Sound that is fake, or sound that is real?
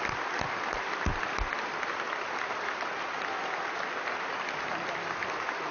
real